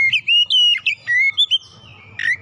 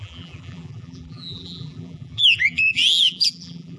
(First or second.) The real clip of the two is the first